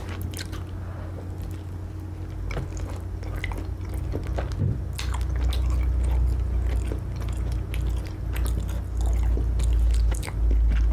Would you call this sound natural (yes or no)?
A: yes